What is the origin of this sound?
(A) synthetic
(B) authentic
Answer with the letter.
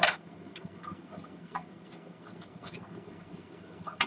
A